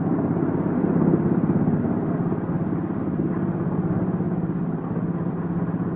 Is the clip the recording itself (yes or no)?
yes